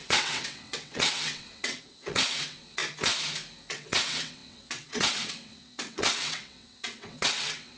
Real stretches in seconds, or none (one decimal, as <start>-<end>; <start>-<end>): 2.8-3.7